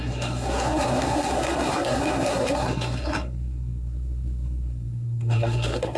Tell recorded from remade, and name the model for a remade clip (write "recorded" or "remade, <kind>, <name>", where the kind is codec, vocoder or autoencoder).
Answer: remade, codec, SNAC